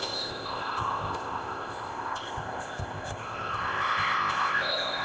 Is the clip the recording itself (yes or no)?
no